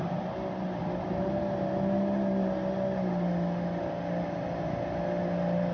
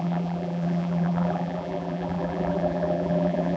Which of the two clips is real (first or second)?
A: first